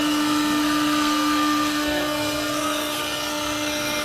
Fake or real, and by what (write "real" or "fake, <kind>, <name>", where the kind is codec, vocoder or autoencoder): fake, codec, SNAC